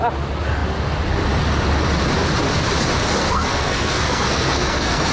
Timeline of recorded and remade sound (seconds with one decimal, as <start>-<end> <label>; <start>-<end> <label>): 0.0-3.2 recorded; 3.2-5.1 remade